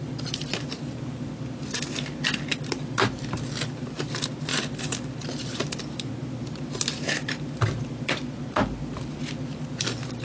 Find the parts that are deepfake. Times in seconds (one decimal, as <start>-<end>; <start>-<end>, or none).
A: none